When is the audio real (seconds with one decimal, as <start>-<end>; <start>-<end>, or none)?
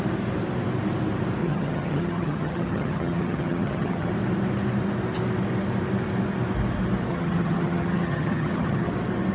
0.0-1.4; 4.1-7.1; 8.9-9.3